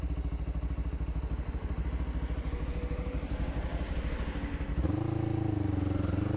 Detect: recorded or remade recorded